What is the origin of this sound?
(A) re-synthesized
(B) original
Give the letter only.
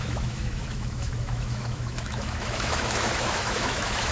A